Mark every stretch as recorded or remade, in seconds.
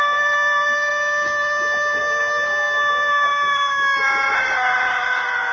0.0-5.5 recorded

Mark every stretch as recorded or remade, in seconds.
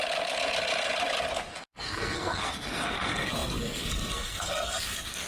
0.0-1.5 recorded; 1.5-5.3 remade